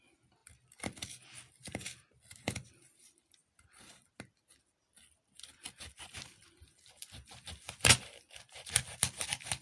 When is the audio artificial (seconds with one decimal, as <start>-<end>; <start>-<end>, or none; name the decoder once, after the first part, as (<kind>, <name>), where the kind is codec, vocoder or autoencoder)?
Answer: 0.4-3.5 (vocoder, BigVGAN v2)